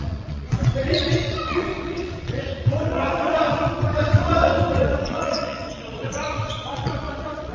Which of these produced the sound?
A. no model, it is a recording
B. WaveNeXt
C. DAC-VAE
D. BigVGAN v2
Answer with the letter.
B